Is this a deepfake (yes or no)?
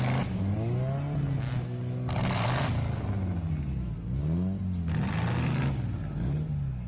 no